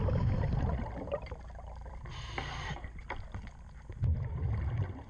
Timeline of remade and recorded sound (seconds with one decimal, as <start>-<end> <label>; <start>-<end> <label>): 0.0-2.0 remade; 2.0-5.1 recorded